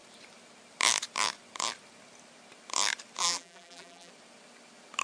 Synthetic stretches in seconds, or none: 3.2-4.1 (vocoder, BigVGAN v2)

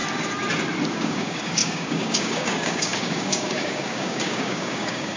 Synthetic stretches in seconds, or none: 0.9-5.2 (codec, DAC)

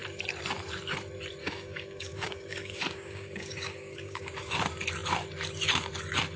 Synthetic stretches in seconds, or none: 1.4-4.5 (codec, DAC)

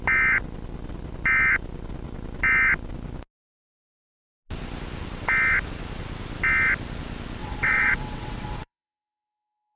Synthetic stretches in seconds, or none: 7.4-9.8 (vocoder, WaveNeXt)

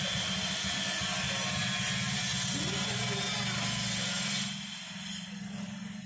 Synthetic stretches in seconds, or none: none

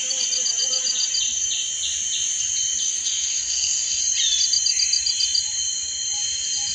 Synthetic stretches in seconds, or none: 2.8-4.0 (codec, SNAC)

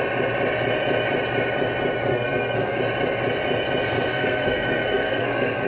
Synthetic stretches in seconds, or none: 2.1-2.8 (codec, SNAC); 4.1-5.7